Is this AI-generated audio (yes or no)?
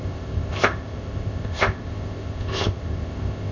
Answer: yes